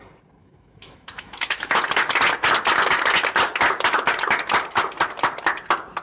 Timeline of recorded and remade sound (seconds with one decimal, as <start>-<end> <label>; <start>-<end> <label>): 0.0-0.4 recorded; 0.4-1.8 remade; 1.8-6.0 recorded